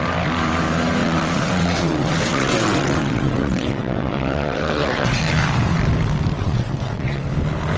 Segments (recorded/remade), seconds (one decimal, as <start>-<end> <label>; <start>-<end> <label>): 0.0-1.0 recorded; 1.0-5.2 remade; 5.2-6.4 recorded; 6.4-7.2 remade; 7.2-7.8 recorded